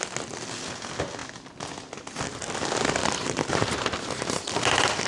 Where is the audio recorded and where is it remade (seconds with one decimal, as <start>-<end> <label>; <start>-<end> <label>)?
0.0-3.0 recorded; 3.0-4.5 remade; 4.5-5.1 recorded